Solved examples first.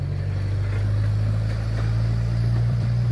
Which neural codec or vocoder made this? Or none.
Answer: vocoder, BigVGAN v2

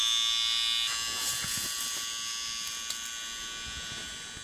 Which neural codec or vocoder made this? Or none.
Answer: none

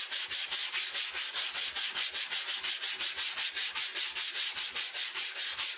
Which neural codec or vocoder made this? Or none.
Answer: none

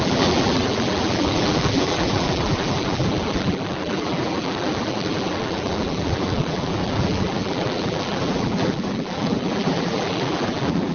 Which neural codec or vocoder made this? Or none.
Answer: vocoder, BigVGAN v2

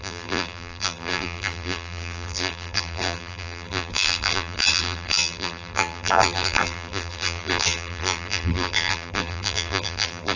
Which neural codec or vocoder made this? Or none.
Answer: vocoder, BigVGAN v2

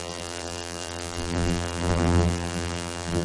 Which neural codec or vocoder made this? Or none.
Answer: vocoder, BigVGAN v2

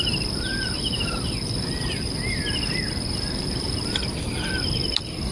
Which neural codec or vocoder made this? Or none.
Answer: none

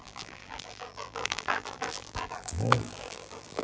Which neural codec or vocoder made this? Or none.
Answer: vocoder, BigVGAN v2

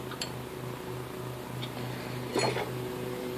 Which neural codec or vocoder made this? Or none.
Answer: vocoder, BigVGAN v2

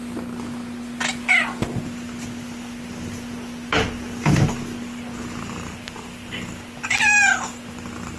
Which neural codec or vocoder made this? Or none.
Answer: none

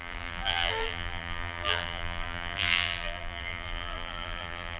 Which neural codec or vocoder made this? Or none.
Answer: vocoder, BigVGAN v2